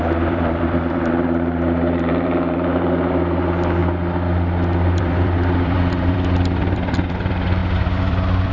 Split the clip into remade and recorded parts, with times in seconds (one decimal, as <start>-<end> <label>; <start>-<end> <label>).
0.0-3.8 remade; 3.8-5.0 recorded; 5.0-8.5 remade